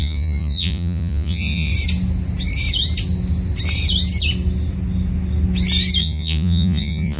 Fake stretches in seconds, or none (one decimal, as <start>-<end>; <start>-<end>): 0.0-1.7; 6.0-7.2